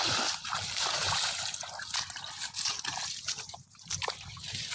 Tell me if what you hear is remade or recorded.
remade